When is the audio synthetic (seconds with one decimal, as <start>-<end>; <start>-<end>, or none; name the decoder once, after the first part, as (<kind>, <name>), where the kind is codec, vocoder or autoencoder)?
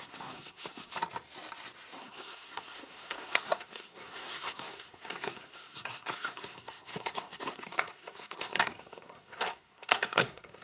0.0-0.9 (codec, SNAC); 2.0-10.6